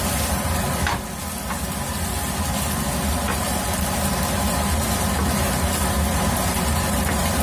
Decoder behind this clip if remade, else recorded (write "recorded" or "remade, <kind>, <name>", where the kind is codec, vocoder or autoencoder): recorded